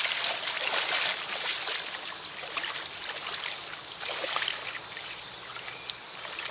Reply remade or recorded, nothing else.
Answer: recorded